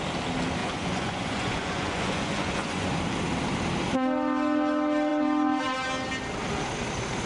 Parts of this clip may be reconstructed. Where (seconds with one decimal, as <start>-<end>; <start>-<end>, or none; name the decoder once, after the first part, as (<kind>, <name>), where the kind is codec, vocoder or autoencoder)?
0.6-2.9 (vocoder, Vocos)